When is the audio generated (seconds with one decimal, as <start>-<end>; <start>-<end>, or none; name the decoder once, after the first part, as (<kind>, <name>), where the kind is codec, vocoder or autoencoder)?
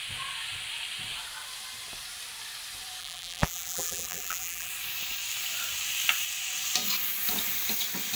3.0-4.7 (vocoder, BigVGAN v2)